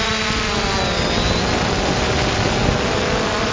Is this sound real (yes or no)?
yes